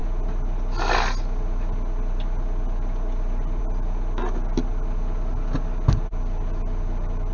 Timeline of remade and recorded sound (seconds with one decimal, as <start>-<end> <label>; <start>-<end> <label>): 0.0-7.3 recorded